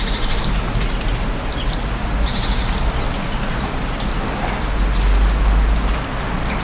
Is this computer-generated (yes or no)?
no